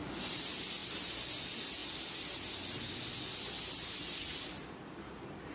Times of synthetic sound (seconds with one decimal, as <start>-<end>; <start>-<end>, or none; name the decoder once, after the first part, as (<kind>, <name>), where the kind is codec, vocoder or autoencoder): none